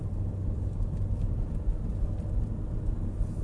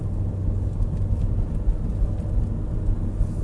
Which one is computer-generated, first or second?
first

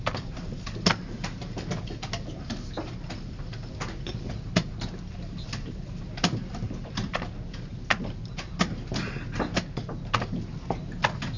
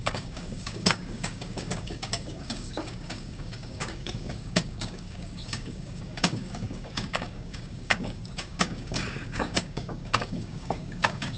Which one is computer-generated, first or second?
second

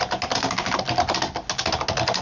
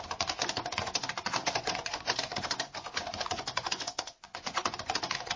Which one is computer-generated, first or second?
second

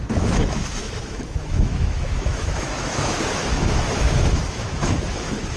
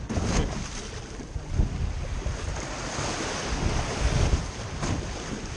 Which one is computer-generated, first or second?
first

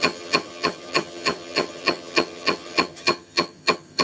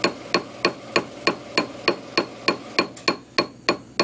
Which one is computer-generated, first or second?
first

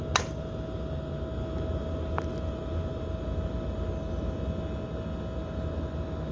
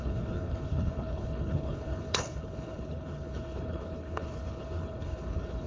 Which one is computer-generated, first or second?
second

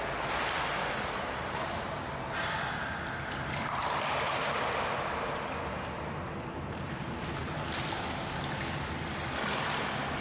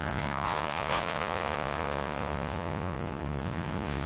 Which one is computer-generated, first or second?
second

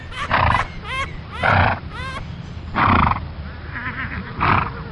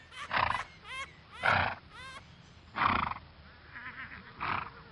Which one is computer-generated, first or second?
first